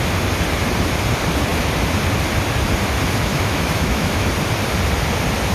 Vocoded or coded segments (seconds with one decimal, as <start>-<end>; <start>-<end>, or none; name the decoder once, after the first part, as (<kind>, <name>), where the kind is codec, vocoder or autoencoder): 3.3-4.3 (autoencoder, DAC-VAE)